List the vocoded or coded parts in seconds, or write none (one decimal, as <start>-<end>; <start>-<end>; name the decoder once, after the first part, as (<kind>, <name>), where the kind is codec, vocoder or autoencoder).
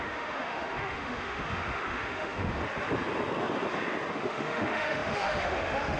0.0-2.6 (autoencoder, DAC-VAE); 4.1-6.0